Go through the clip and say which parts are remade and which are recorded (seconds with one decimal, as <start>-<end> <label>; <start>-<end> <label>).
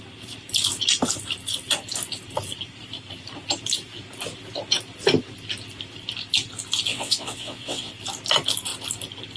0.0-6.9 recorded; 6.9-7.9 remade; 7.9-9.4 recorded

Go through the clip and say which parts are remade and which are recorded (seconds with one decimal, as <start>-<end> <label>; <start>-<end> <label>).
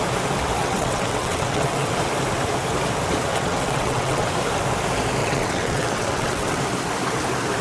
0.0-0.6 recorded; 0.6-1.9 remade; 1.9-3.3 recorded; 3.3-4.3 remade; 4.3-5.2 recorded; 5.2-6.6 remade; 6.6-7.6 recorded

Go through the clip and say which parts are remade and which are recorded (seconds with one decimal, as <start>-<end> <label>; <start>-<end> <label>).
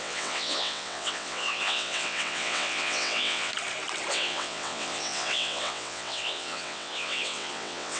0.0-3.5 remade; 3.5-4.1 recorded; 4.1-8.0 remade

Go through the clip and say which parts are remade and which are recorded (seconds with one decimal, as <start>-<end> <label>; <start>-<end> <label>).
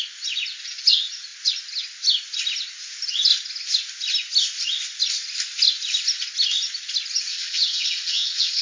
0.0-7.3 recorded; 7.3-8.6 remade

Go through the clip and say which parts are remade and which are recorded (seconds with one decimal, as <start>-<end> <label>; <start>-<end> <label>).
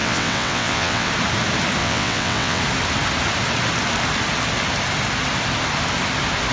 0.0-1.1 remade; 1.1-1.8 recorded; 1.8-2.6 remade; 2.6-6.5 recorded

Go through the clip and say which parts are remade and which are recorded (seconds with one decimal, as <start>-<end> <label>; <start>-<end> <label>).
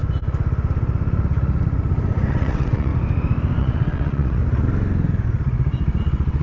0.0-2.3 recorded; 2.3-2.9 remade; 2.9-3.6 recorded; 3.6-4.4 remade; 4.4-6.0 recorded; 6.0-6.4 remade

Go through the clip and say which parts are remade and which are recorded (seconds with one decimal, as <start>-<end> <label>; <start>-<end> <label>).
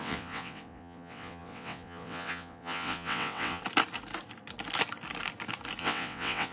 0.0-3.6 remade; 3.6-5.8 recorded; 5.8-6.5 remade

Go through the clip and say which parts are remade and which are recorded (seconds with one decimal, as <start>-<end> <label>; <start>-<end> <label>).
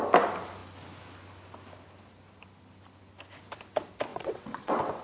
0.0-4.1 recorded; 4.1-5.0 remade